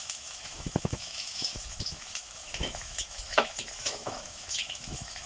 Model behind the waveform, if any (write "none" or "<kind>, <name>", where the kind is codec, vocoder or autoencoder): autoencoder, DAC-VAE